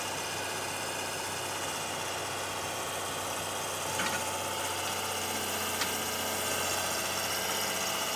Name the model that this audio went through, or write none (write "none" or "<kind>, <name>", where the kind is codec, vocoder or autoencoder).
none